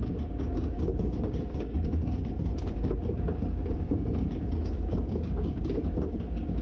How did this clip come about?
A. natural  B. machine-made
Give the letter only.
B